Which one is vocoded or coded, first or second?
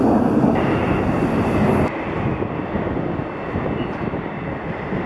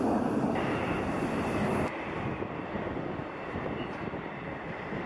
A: second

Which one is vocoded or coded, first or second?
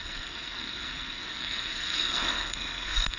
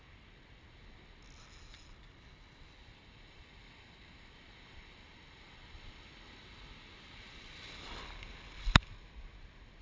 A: first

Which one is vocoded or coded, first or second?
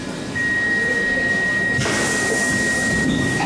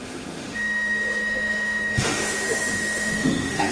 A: second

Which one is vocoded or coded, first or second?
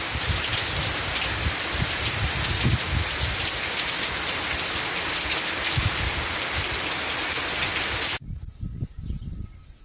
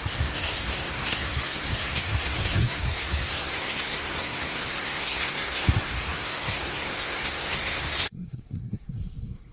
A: second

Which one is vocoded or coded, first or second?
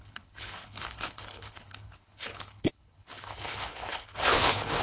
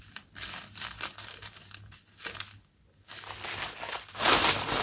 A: first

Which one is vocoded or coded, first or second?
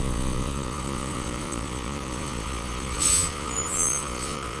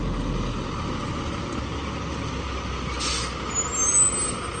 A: first